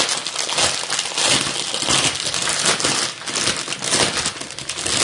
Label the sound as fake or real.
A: real